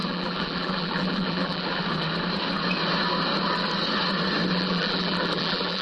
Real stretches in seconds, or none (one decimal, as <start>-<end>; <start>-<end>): 1.8-4.5